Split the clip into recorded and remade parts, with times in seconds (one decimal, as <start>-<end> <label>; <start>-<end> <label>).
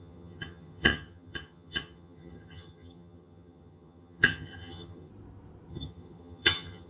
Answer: 0.0-5.1 remade; 5.1-5.7 recorded; 5.7-6.9 remade